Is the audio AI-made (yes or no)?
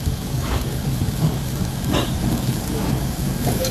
yes